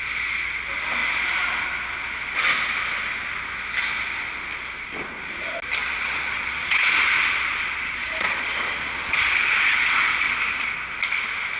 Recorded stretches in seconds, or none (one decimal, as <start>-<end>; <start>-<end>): 0.0-5.8; 10.4-11.6